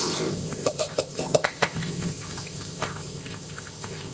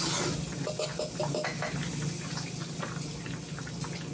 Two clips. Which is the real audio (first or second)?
second